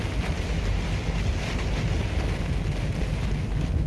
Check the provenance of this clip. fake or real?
real